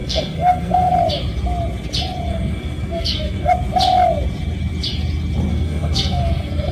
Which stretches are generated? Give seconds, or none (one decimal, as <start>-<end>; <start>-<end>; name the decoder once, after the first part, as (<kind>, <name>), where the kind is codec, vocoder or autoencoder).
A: 0.0-0.9 (codec, SNAC); 2.3-3.5; 5.5-6.7